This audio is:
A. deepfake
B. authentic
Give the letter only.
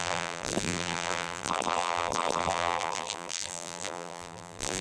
A